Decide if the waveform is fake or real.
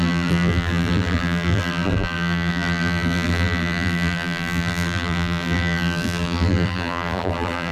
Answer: fake